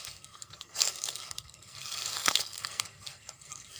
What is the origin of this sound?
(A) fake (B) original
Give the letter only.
A